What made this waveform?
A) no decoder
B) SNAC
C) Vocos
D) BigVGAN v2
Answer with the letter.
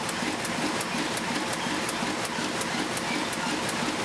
A